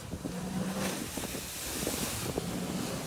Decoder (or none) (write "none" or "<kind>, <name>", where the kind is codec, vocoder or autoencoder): none